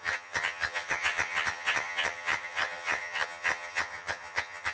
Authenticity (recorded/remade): remade